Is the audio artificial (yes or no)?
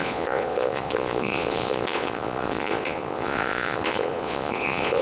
yes